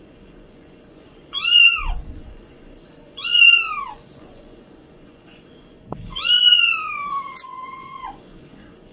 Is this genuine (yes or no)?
no